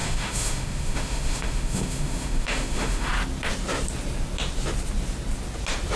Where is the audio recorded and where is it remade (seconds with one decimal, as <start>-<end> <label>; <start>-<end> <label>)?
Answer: 0.0-3.1 remade; 3.1-6.0 recorded